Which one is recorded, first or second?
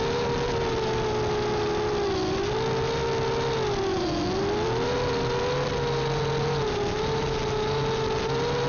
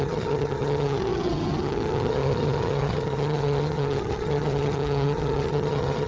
first